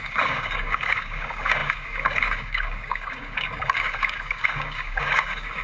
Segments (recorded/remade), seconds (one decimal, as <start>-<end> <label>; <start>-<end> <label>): 0.0-5.6 remade